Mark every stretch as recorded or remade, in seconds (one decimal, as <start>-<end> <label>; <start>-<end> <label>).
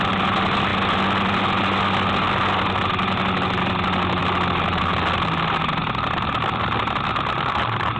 0.0-8.0 recorded